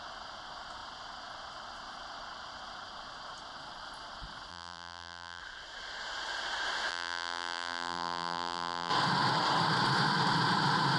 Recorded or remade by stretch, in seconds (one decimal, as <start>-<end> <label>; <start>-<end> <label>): 0.0-4.5 recorded; 4.5-5.4 remade; 5.4-6.9 recorded; 6.9-8.9 remade; 8.9-11.0 recorded